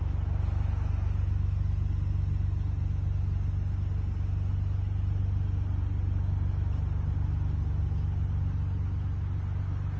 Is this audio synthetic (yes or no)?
no